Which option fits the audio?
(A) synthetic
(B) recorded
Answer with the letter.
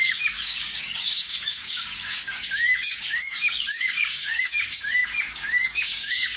A